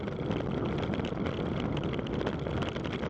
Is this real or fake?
real